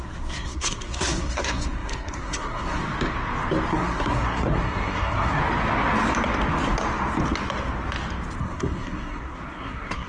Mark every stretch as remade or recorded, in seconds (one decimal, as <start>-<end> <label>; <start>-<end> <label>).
0.0-2.8 remade; 2.8-3.7 recorded; 3.7-5.4 remade; 5.4-8.4 recorded; 8.4-10.1 remade